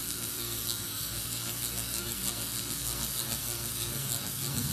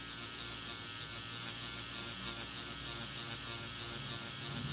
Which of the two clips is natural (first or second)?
second